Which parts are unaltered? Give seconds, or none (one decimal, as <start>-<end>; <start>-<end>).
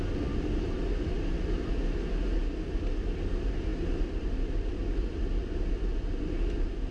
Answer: 0.0-6.9